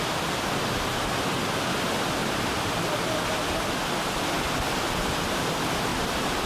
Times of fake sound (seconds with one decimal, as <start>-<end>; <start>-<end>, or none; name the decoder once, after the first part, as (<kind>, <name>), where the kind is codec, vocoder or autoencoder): 2.2-2.7 (vocoder, BigVGAN v2); 5.9-6.5